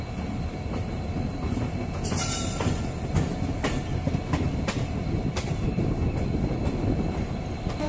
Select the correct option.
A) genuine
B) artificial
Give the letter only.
A